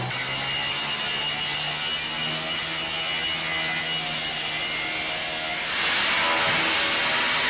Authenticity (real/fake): real